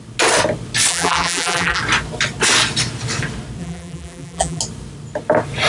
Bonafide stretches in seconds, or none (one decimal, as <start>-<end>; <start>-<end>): 0.0-0.9; 1.8-3.6; 4.6-5.7